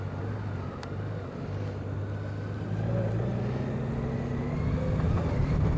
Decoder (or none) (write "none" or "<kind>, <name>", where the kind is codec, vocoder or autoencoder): none